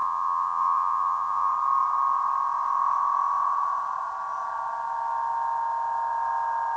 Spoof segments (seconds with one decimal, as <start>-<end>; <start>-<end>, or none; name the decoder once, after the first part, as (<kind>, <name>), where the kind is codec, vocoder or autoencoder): 0.0-1.5 (vocoder, Vocos)